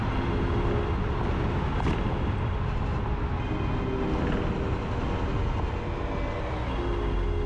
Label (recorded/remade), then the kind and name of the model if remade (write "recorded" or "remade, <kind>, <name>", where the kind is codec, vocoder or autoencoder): recorded